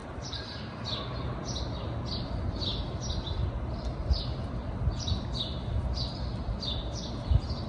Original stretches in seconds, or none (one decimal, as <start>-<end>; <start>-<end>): 0.7-7.7